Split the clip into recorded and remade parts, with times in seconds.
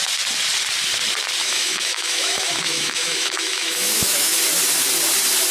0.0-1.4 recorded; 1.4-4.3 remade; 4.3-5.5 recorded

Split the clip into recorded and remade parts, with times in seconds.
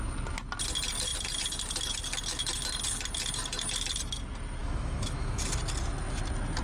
0.0-4.6 recorded; 4.6-5.4 remade; 5.4-6.6 recorded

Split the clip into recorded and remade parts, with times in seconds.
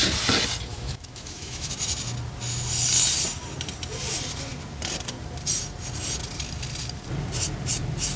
0.0-0.7 recorded; 0.7-1.7 remade; 1.7-8.2 recorded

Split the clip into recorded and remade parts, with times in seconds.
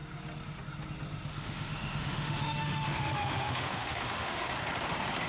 0.0-1.3 recorded; 1.3-4.5 remade; 4.5-5.3 recorded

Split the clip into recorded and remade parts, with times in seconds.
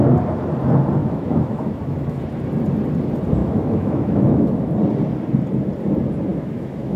0.0-1.0 recorded; 1.0-2.2 remade; 2.2-3.4 recorded; 3.4-4.7 remade; 4.7-6.3 recorded; 6.3-7.0 remade